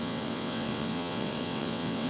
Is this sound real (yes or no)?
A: no